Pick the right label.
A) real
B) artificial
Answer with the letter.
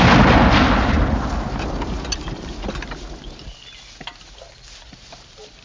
A